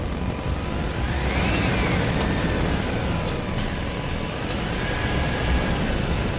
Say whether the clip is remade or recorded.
recorded